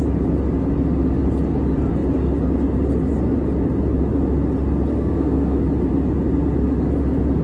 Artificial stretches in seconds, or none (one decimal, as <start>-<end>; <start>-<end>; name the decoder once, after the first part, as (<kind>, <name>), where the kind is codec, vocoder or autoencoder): 4.9-5.6 (codec, SNAC)